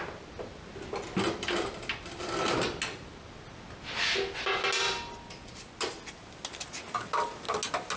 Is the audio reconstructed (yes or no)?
no